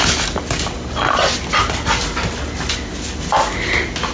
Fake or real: real